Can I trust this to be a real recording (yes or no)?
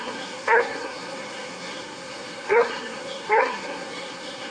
no